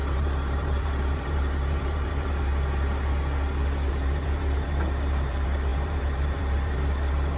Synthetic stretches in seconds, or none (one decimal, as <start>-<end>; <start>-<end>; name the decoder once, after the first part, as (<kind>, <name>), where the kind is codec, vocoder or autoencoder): 0.0-2.5 (vocoder, BigVGAN v2); 3.9-7.4